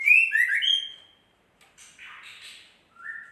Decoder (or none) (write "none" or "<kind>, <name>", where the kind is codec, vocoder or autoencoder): none